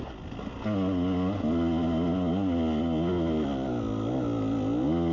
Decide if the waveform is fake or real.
real